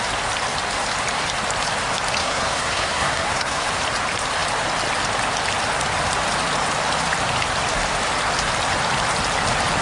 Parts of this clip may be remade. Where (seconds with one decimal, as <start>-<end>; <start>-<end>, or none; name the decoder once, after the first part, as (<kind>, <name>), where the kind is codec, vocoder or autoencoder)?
2.2-3.7 (codec, SNAC)